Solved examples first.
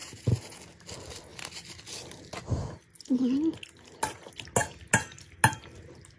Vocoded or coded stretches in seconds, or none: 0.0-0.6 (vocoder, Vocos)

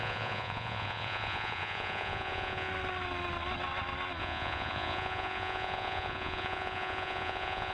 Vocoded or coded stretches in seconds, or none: 0.0-2.7 (vocoder, Vocos); 4.2-7.7

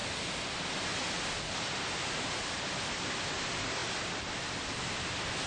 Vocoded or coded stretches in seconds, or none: none

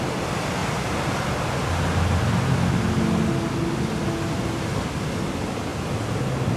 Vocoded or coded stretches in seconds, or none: none

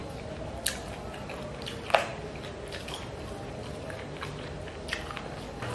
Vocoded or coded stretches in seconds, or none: none

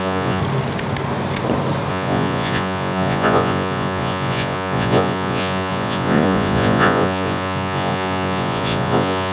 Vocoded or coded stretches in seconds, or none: 0.0-0.4 (vocoder, Vocos); 1.9-9.3

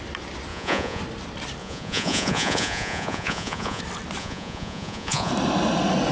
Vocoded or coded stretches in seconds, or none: 0.5-1.0 (vocoder, Vocos); 1.6-3.8; 4.2-5.3